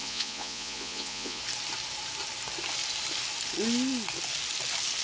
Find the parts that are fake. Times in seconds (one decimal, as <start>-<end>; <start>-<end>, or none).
0.0-1.4